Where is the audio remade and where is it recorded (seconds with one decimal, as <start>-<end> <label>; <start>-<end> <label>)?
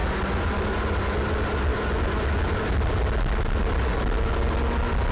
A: 0.0-5.1 recorded